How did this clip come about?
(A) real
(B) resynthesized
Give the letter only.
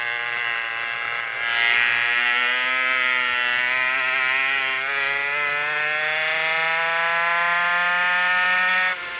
A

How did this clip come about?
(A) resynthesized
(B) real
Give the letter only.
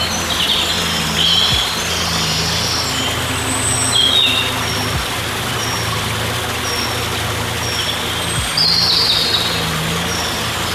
B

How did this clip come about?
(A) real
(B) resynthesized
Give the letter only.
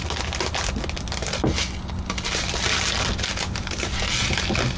A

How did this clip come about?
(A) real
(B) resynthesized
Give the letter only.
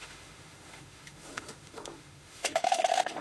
B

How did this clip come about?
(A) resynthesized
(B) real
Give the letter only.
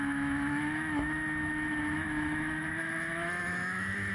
A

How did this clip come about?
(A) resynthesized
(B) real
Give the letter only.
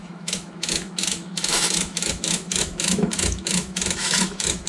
A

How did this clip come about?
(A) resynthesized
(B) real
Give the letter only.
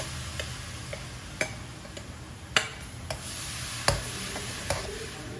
B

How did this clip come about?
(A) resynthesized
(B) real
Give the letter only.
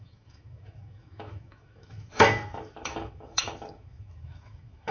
A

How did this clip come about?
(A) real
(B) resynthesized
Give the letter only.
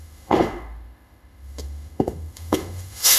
B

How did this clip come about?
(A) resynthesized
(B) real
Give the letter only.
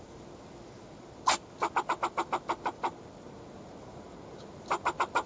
B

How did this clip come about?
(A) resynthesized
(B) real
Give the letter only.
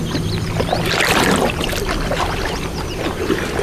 B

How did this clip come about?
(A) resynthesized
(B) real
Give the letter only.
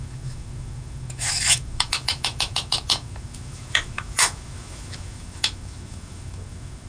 A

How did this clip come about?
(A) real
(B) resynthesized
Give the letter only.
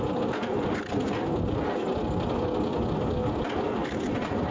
A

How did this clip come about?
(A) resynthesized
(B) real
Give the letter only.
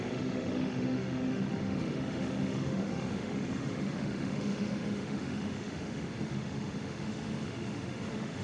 A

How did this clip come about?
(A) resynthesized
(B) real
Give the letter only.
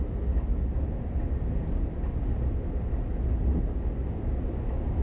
B